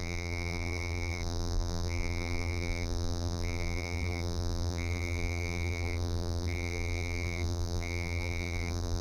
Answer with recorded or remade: remade